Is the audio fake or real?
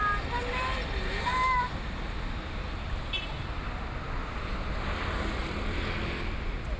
real